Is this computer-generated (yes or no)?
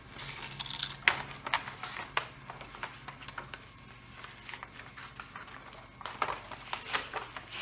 no